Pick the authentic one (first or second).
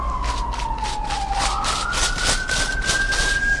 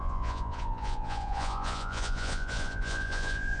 first